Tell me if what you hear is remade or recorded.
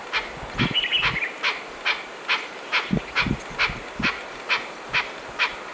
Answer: recorded